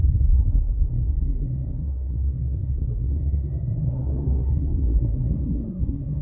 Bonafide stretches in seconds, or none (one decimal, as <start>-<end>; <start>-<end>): none